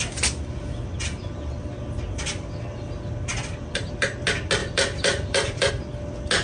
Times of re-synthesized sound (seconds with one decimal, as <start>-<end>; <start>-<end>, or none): 3.3-4.1; 4.6-5.7